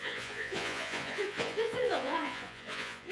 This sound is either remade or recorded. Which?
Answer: remade